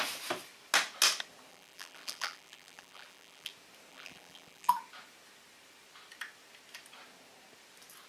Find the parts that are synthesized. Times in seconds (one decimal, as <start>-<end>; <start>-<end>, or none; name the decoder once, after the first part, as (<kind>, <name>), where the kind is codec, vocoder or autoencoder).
1.5-3.5 (vocoder, BigVGAN v2); 3.9-4.7